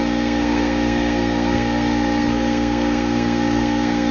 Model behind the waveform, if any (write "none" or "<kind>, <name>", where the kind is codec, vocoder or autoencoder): codec, SNAC